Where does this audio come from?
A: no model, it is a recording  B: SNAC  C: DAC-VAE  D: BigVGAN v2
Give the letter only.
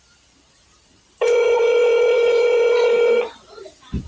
D